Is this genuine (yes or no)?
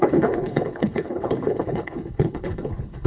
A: no